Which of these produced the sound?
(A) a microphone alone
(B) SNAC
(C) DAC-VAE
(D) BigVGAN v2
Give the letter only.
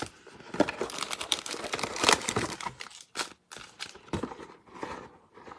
A